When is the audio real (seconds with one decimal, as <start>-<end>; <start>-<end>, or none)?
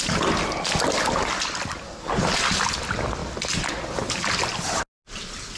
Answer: 0.0-5.6